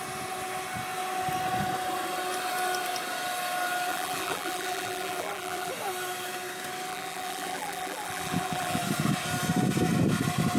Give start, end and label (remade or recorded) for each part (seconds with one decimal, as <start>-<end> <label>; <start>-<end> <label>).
0.0-3.9 recorded; 3.9-5.7 remade; 5.7-6.9 recorded; 6.9-8.8 remade; 8.8-10.6 recorded